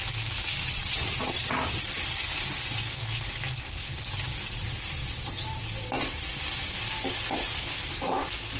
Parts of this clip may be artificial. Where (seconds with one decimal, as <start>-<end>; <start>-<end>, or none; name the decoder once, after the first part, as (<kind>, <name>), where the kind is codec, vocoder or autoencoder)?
0.6-1.8 (vocoder, Vocos); 5.0-5.6